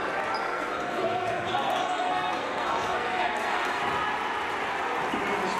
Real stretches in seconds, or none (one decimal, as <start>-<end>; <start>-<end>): 0.0-0.4; 3.8-5.6